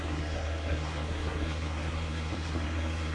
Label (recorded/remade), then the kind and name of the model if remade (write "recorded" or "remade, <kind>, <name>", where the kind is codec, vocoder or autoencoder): remade, codec, SNAC